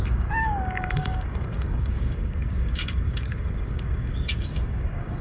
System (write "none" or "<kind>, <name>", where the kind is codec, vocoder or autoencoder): codec, DAC